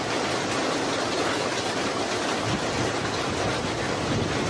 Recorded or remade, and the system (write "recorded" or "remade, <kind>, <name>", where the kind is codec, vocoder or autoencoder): recorded